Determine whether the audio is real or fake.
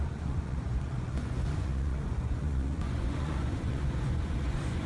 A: fake